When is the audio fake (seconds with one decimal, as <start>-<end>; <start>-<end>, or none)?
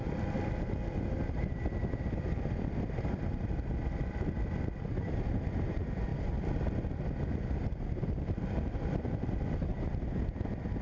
0.0-6.1; 7.3-10.8